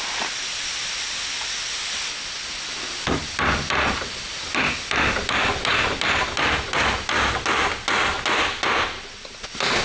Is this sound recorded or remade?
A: recorded